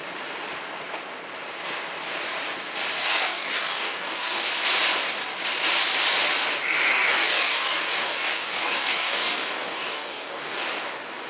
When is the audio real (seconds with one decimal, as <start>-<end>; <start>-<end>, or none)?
0.0-3.0; 4.5-6.9; 10.6-11.3